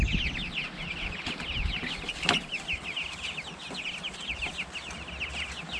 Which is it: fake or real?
real